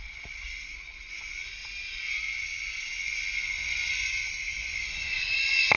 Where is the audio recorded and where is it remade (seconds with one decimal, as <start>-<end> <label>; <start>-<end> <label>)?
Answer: 0.0-1.6 remade; 1.6-2.2 recorded; 2.2-5.8 remade